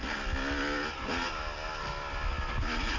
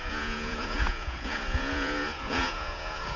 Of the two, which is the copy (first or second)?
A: second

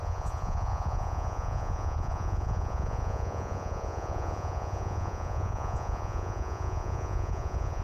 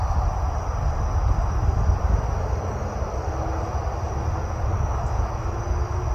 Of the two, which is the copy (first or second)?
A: first